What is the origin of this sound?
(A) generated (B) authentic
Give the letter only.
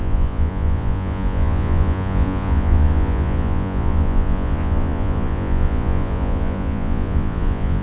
A